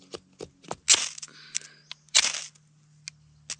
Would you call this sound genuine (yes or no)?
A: yes